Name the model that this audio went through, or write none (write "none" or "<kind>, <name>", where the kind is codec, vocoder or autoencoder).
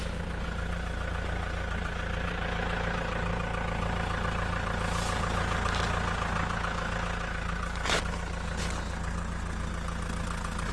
none